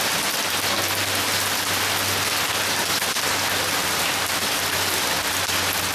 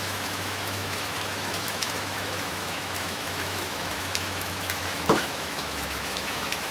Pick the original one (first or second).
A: first